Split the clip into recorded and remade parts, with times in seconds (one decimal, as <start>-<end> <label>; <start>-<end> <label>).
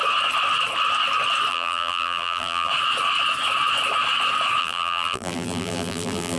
0.0-1.5 recorded; 1.5-2.7 remade; 2.7-4.6 recorded; 4.6-6.4 remade